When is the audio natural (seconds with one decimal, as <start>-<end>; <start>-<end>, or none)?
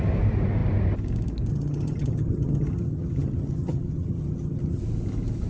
0.0-1.5; 4.8-5.5